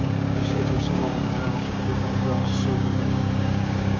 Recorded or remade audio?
remade